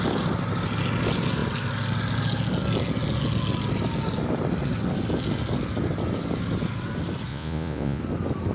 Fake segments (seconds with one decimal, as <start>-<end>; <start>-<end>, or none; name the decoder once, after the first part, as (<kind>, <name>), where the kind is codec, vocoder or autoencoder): 7.3-8.0 (vocoder, Vocos)